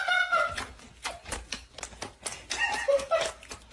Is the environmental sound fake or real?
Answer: real